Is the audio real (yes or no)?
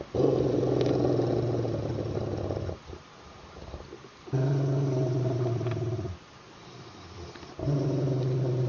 yes